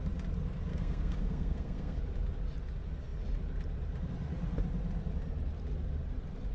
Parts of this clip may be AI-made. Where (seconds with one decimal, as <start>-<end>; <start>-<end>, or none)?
0.7-2.0